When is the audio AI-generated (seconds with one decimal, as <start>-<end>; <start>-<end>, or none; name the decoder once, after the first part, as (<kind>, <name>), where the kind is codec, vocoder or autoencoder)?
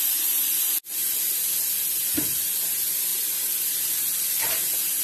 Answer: none